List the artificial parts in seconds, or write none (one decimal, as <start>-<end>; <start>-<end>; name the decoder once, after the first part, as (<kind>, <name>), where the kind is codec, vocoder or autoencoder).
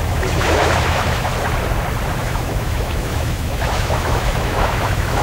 0.0-1.3 (autoencoder, DAC-VAE); 2.2-5.2